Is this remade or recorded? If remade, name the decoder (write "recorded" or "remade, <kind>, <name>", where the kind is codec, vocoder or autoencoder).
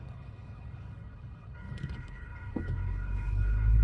remade, codec, HILCodec